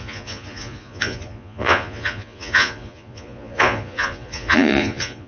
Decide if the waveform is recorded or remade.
remade